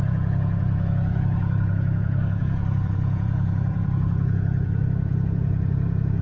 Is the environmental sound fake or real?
fake